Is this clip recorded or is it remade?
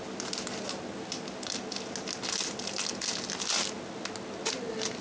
recorded